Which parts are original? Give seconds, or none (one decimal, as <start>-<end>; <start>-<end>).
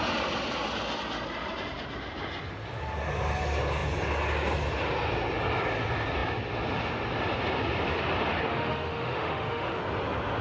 0.0-8.5; 9.8-10.4